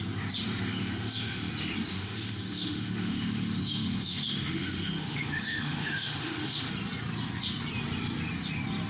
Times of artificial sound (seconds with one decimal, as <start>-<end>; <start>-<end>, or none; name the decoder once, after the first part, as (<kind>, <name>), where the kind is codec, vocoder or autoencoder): 0.8-1.5 (autoencoder, DAC-VAE); 1.9-6.7